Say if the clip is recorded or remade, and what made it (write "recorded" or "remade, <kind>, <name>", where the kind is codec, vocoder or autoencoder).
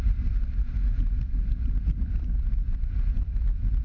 remade, vocoder, BigVGAN v2